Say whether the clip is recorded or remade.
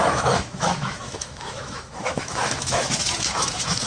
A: remade